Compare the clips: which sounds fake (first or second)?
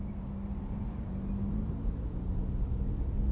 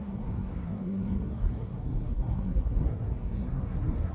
second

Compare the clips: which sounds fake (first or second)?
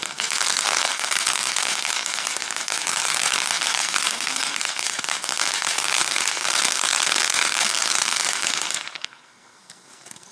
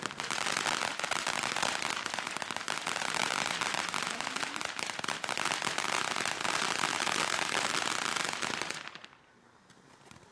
first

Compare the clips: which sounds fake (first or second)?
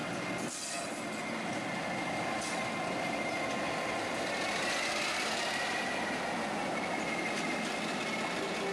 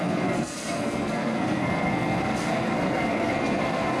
second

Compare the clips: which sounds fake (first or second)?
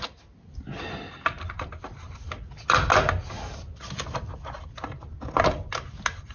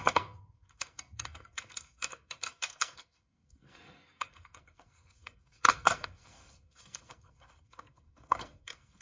second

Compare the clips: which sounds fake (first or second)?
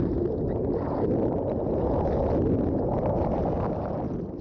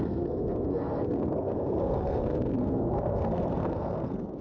second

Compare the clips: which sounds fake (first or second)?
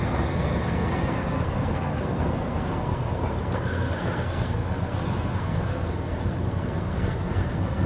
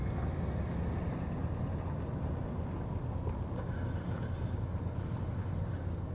first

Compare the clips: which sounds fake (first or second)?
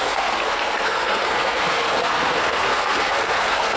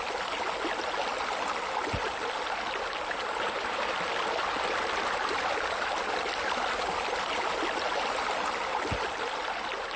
first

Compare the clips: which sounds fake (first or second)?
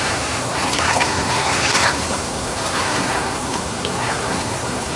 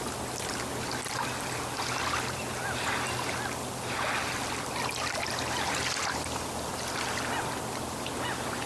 first